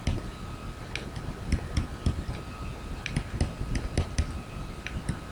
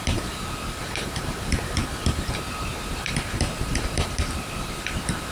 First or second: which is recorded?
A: first